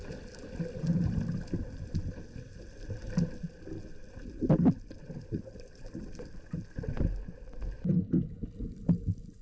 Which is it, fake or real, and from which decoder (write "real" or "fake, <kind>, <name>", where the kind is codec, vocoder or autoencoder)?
real